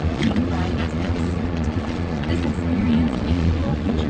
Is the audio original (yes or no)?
no